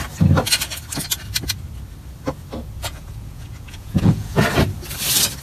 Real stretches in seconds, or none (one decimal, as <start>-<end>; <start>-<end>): 0.0-2.8; 4.4-5.4

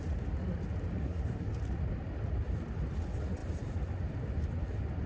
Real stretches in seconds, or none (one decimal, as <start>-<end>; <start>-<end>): 0.0-1.0; 1.5-5.1

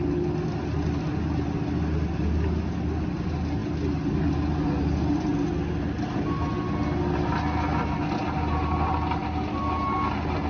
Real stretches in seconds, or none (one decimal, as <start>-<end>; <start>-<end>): 0.0-10.5

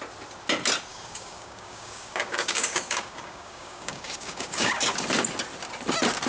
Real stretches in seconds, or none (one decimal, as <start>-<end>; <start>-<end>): 0.0-0.9; 4.7-6.3

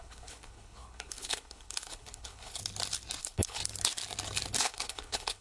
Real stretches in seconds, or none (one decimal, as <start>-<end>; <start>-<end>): 2.6-3.2; 3.6-4.6

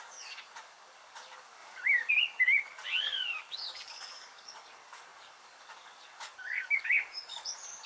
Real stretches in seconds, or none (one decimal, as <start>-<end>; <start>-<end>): none

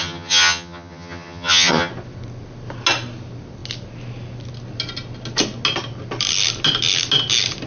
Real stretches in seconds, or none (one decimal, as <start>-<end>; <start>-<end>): 1.9-7.7